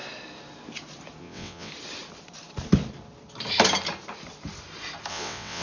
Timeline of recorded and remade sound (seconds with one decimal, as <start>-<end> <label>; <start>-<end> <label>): 0.0-1.2 recorded; 1.2-1.7 remade; 1.7-5.1 recorded; 5.1-5.6 remade